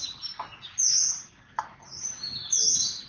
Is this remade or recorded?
recorded